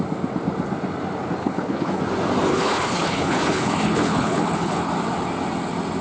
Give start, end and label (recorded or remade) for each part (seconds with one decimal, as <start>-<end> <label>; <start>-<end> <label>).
0.0-1.4 recorded; 1.4-2.0 remade; 2.0-2.5 recorded; 2.5-4.9 remade; 4.9-6.0 recorded

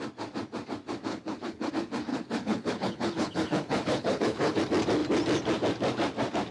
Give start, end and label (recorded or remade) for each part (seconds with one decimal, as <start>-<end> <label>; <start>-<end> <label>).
0.0-1.1 recorded; 1.1-1.7 remade; 1.7-2.1 recorded; 2.1-4.6 remade; 4.6-6.5 recorded

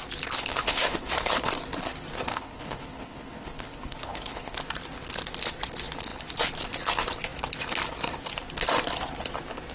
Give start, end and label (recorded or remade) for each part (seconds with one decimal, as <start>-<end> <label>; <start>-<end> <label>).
0.0-0.5 recorded; 0.5-1.5 remade; 1.5-2.3 recorded; 2.3-4.6 remade; 4.6-9.7 recorded

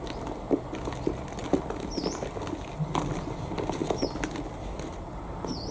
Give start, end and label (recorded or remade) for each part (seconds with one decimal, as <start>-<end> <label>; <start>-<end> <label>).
0.0-5.7 recorded